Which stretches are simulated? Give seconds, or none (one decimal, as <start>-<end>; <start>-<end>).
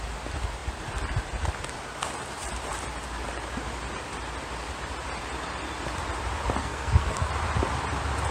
6.6-7.3